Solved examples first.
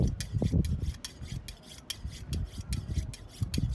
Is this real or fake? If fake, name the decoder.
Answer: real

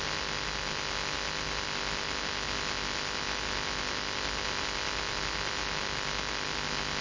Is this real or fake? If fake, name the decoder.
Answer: real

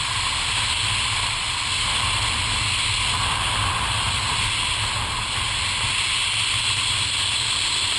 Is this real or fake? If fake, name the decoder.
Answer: real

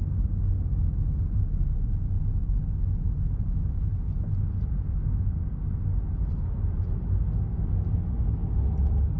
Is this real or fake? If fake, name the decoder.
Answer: real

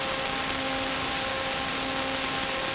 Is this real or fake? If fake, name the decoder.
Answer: real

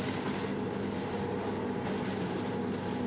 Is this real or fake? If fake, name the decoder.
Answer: real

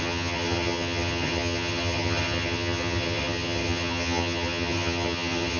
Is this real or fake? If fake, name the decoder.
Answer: fake, vocoder, HiFi-GAN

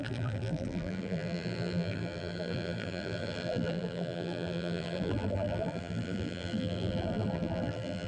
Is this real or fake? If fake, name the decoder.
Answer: fake, vocoder, BigVGAN v2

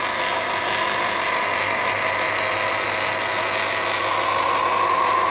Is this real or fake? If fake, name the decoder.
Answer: real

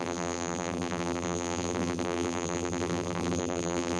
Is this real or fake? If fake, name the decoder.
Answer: fake, vocoder, BigVGAN v2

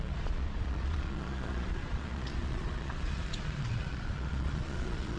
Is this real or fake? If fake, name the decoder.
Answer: fake, vocoder, Vocos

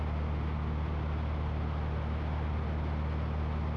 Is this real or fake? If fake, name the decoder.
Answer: real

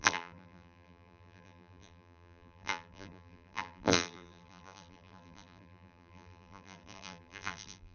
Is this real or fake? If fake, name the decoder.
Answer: fake, vocoder, BigVGAN v2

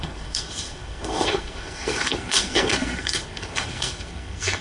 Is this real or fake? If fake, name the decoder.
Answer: fake, codec, SNAC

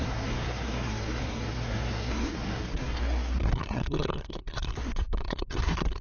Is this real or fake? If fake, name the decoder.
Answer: fake, codec, SNAC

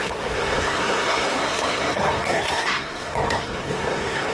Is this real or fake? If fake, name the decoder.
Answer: fake, codec, SNAC